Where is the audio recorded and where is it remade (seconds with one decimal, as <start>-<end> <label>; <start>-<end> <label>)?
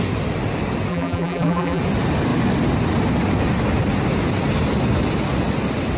0.0-0.9 recorded; 0.9-1.8 remade; 1.8-6.0 recorded